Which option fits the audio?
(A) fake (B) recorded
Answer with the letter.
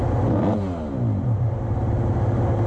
B